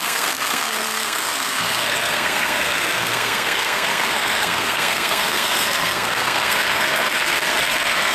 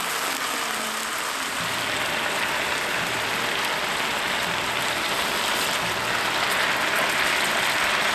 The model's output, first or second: first